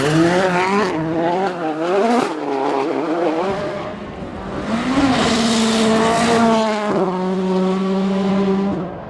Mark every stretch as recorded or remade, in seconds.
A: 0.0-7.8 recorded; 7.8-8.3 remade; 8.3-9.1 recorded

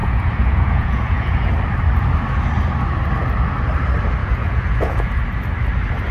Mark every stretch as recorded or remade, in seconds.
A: 0.0-1.5 remade; 1.5-4.2 recorded; 4.2-5.2 remade; 5.2-6.1 recorded